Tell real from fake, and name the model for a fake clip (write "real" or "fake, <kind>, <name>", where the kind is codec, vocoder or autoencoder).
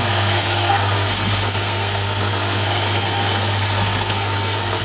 fake, codec, SNAC